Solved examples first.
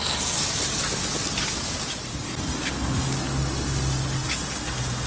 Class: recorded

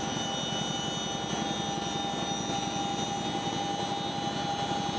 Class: recorded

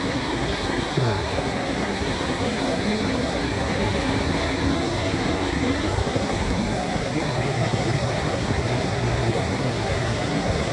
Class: remade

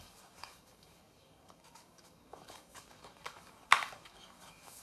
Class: remade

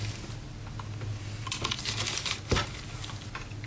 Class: recorded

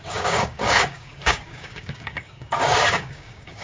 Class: remade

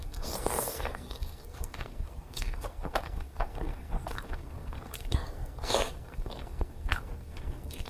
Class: remade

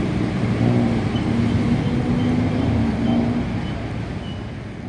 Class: recorded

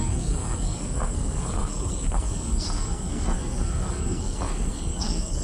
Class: remade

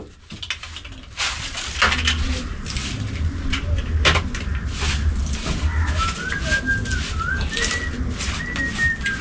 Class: recorded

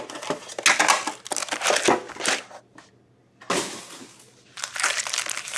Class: recorded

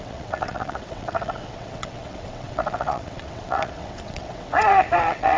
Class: remade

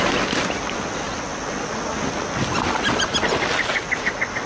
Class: recorded